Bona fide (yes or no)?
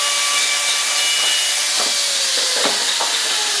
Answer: yes